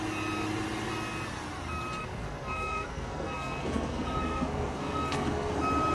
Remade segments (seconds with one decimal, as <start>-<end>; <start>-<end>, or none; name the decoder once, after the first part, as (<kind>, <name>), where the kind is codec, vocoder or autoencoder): 2.0-5.5 (codec, SNAC)